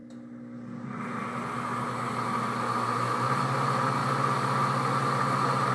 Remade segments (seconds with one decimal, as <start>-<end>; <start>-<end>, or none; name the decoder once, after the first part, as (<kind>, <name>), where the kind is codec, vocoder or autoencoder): none

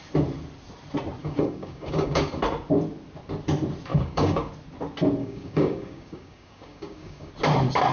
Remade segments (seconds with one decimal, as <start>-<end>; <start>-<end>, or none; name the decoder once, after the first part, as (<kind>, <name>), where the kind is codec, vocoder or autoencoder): 1.2-2.4 (codec, DAC); 3.9-4.5; 5.2-7.3